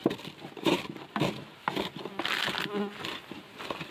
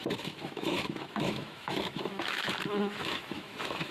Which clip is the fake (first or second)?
second